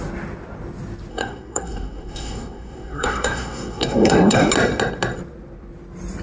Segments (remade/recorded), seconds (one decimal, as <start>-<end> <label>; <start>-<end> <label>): 0.0-1.1 recorded; 1.1-4.5 remade; 4.5-6.2 recorded